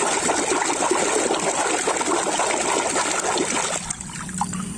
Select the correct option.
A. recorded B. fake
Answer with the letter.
A